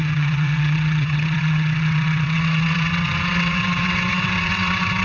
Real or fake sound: fake